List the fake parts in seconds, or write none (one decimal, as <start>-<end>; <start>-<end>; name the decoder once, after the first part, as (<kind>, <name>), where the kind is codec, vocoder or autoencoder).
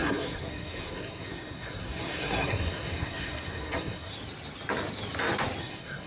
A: 0.0-4.1 (codec, SNAC); 5.6-6.1